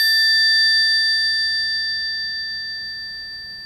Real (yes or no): yes